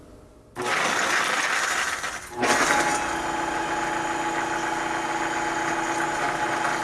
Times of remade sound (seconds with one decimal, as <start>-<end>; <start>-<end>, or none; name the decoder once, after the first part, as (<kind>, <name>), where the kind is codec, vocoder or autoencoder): none